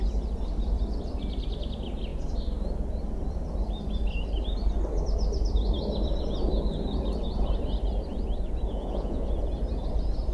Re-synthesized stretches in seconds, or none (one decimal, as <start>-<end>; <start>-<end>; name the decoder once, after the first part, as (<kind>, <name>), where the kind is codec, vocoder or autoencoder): 8.7-9.3 (vocoder, Vocos)